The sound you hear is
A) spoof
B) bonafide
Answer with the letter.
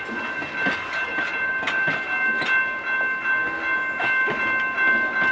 B